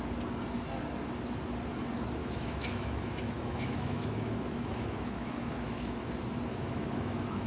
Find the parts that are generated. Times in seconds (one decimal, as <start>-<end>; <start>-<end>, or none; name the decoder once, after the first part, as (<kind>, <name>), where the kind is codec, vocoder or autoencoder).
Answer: 2.2-6.1 (autoencoder, DAC-VAE); 6.5-7.5